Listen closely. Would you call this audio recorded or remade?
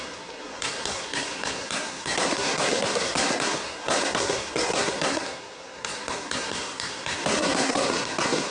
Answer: remade